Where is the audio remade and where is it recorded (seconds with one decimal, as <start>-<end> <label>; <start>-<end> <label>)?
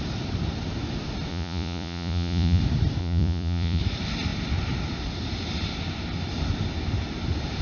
0.0-1.3 recorded; 1.3-2.6 remade; 2.6-3.0 recorded; 3.0-3.8 remade; 3.8-7.6 recorded